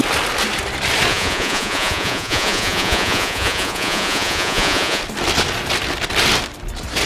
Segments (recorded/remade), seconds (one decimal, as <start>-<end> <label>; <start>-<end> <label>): 0.0-1.1 recorded; 1.1-5.0 remade; 5.0-7.1 recorded